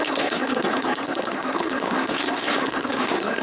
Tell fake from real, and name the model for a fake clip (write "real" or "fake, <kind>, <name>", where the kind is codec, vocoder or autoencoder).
fake, codec, SNAC